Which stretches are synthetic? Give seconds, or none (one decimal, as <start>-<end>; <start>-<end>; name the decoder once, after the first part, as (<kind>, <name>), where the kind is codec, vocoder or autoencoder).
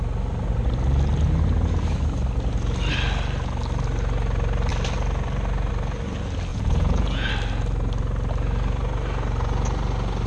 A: 6.5-7.3 (vocoder, Vocos)